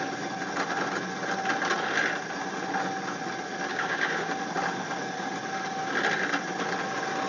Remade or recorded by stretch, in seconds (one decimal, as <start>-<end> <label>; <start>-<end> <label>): 0.0-3.7 recorded; 3.7-4.3 remade; 4.3-7.3 recorded